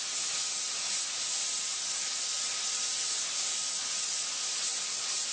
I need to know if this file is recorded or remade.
recorded